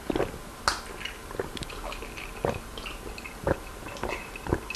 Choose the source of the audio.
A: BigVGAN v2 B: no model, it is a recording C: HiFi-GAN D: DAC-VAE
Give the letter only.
B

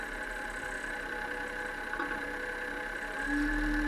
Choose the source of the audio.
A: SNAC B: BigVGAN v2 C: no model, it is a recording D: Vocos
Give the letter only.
C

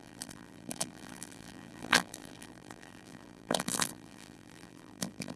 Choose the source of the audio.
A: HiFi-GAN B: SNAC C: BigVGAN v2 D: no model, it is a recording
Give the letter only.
C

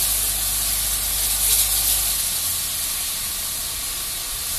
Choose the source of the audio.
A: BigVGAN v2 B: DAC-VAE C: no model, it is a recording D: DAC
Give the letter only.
C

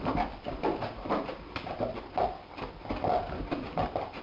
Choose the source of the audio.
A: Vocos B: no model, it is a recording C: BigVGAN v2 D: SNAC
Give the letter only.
B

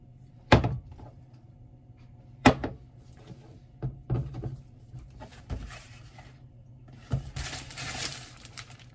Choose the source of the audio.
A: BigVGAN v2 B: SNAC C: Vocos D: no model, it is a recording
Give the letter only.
A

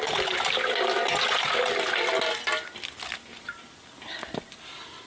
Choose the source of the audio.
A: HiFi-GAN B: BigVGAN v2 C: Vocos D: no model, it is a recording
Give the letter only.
D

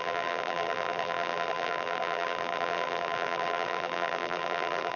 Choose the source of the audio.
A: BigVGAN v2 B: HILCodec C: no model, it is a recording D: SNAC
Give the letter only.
A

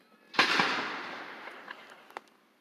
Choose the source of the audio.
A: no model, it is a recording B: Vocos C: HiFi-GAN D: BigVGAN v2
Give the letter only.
A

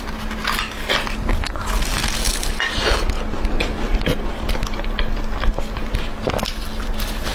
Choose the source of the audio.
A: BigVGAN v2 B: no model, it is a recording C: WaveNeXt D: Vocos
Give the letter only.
B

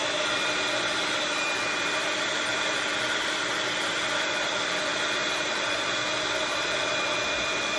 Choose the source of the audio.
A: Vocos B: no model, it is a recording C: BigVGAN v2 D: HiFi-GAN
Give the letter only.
C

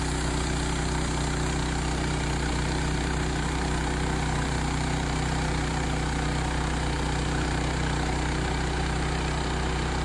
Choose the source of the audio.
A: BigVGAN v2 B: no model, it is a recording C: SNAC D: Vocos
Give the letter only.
A